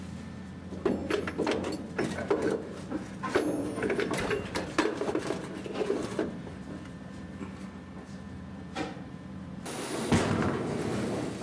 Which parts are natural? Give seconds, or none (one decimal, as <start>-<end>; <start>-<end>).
0.0-11.4